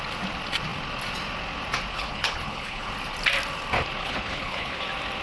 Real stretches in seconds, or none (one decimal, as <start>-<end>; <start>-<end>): 0.0-1.9; 2.9-4.0; 4.8-5.2